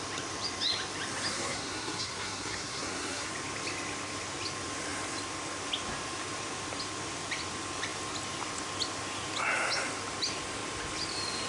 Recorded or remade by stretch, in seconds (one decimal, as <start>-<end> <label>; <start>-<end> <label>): 0.0-1.3 recorded; 1.3-3.3 remade; 3.3-11.5 recorded